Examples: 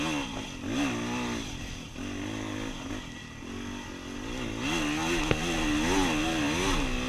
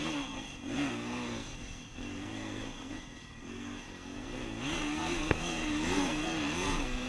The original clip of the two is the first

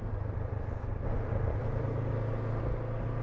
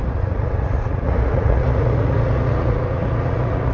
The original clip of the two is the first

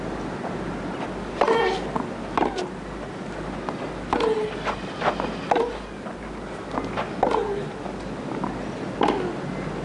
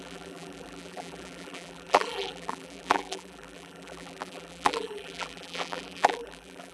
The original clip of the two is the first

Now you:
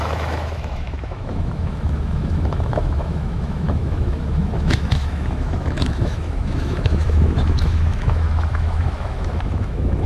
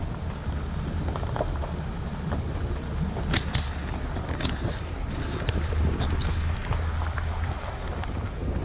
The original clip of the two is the second